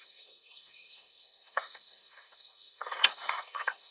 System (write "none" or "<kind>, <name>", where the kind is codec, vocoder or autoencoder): codec, SNAC